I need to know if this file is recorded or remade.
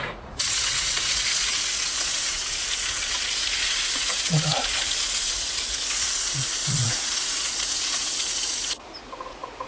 remade